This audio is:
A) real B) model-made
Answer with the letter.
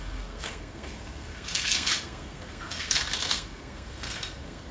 B